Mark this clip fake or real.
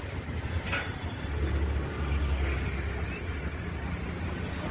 real